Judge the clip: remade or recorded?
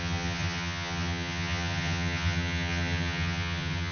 remade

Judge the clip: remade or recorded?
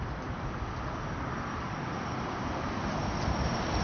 recorded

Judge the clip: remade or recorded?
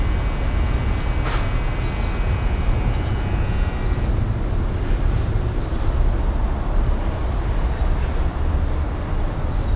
recorded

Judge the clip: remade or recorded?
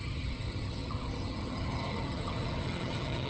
remade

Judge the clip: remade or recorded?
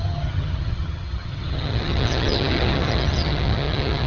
remade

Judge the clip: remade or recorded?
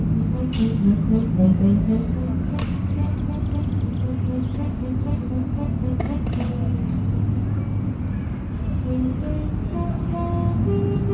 recorded